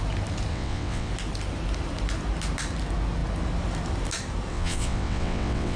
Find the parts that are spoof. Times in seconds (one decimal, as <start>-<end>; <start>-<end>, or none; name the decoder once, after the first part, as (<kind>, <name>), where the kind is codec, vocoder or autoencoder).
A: 0.5-1.1 (vocoder, WaveNeXt); 4.5-5.8

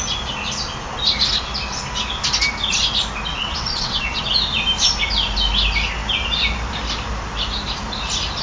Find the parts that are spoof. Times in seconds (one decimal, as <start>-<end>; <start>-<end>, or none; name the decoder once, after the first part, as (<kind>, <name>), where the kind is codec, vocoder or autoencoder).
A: 3.3-4.2 (vocoder, WaveNeXt)

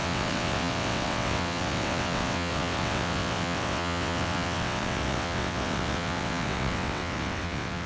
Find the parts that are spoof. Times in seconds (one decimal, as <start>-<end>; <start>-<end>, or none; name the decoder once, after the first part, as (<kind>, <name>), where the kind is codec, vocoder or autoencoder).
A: 0.0-7.9 (vocoder, WaveNeXt)

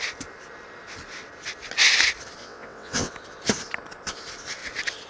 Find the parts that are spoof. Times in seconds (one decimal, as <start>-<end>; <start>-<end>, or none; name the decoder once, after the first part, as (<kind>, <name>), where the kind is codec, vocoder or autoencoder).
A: 2.4-3.1 (vocoder, WaveNeXt)

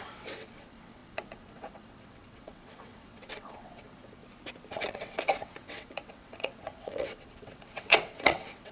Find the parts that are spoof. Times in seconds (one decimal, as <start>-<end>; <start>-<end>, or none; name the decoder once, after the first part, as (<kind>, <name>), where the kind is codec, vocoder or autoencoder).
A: 0.0-4.2 (vocoder, WaveNeXt); 4.7-8.7

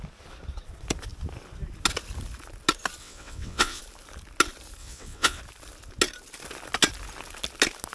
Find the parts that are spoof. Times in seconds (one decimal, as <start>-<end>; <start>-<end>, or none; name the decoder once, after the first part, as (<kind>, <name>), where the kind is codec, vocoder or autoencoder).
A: 3.0-3.8 (vocoder, WaveNeXt); 4.8-5.4

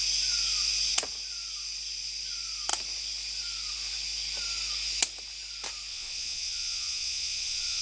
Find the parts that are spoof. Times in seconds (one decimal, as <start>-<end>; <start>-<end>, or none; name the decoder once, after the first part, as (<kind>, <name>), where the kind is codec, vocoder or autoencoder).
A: 5.9-7.8 (vocoder, WaveNeXt)